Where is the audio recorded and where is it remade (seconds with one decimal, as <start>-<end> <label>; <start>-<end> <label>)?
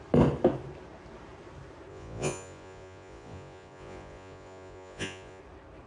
0.0-1.9 recorded; 1.9-5.4 remade; 5.4-5.9 recorded